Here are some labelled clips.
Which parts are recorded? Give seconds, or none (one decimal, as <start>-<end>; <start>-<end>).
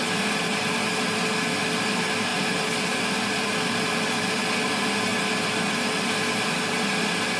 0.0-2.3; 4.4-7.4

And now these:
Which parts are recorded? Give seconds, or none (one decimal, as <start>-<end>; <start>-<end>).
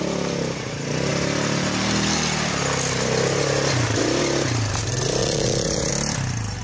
0.0-5.2; 5.9-6.6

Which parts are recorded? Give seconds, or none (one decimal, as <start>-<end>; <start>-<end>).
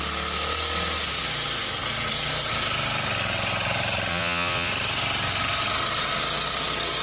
0.0-4.1; 4.7-7.0